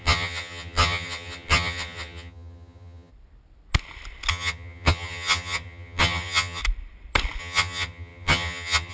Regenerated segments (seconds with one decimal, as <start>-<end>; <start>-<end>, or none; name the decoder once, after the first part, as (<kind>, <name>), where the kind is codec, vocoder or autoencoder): 0.0-3.1 (vocoder, HiFi-GAN); 4.3-6.6; 7.4-8.9